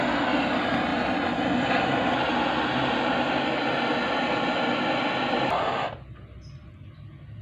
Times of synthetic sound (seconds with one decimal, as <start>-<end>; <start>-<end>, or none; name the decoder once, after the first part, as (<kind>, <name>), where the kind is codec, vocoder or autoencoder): none